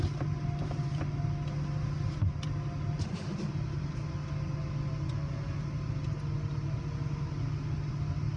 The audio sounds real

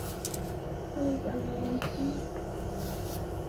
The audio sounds real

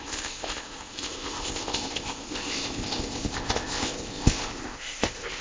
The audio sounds fake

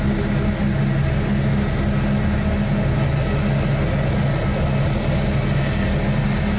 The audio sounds real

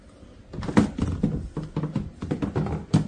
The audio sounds real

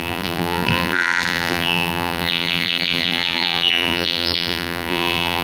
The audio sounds fake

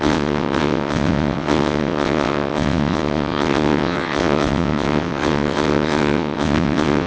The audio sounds fake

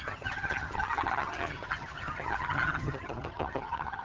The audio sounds fake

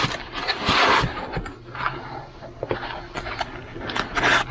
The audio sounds real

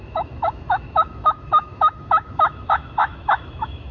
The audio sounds fake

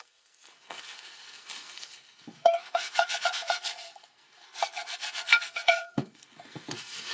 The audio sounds fake